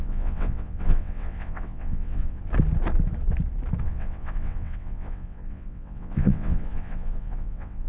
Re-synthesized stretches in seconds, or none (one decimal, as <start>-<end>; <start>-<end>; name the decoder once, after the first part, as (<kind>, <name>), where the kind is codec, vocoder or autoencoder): 0.0-2.4 (vocoder, WaveNeXt); 3.8-7.9